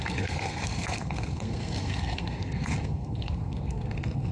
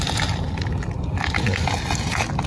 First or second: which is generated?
first